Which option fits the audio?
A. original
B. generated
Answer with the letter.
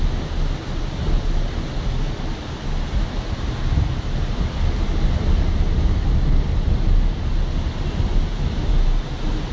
A